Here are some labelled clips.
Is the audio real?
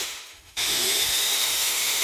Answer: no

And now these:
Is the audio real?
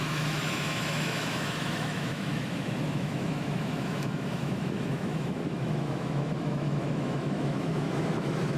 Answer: no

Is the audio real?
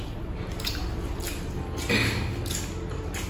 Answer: yes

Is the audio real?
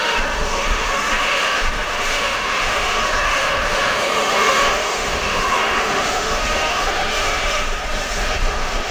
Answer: no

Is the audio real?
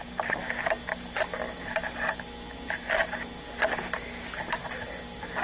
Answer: yes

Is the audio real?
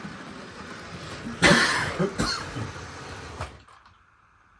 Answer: yes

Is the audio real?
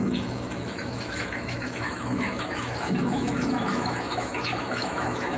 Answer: no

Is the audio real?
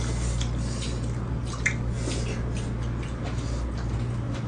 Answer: yes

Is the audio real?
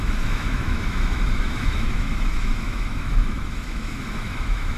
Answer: no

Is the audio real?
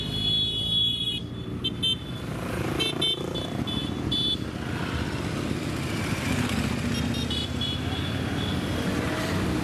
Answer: yes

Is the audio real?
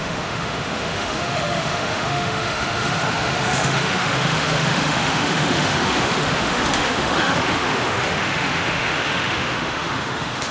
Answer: no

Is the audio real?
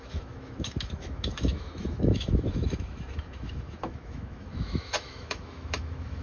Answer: no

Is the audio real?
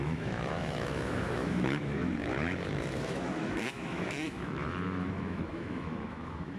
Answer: no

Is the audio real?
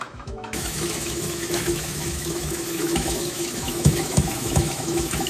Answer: no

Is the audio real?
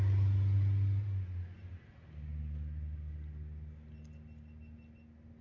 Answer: yes